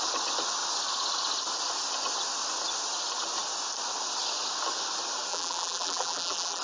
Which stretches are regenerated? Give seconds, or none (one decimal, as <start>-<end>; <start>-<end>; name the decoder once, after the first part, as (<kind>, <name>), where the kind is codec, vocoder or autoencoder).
5.3-6.6 (vocoder, BigVGAN v2)